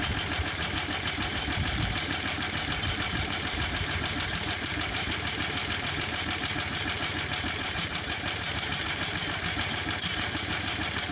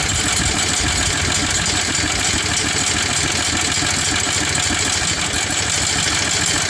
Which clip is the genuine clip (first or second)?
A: second